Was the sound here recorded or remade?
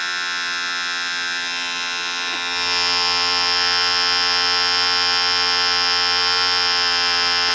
recorded